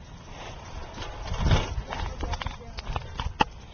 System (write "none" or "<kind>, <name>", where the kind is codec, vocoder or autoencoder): none